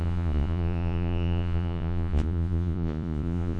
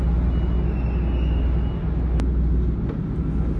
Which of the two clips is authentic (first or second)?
second